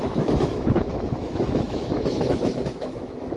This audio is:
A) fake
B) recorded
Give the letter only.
A